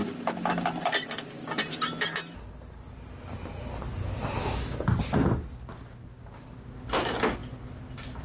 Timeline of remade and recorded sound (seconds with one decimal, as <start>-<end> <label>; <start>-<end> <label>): 0.0-8.2 recorded